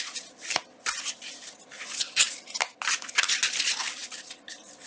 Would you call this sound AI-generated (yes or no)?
no